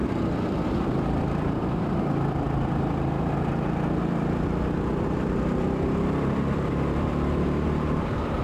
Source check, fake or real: fake